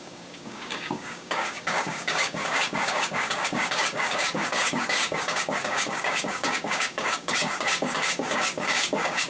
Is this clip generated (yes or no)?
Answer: yes